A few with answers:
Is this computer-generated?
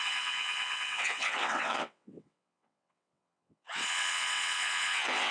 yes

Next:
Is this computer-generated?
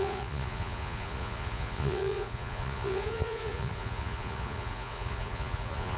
yes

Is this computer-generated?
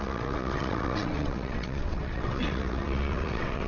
yes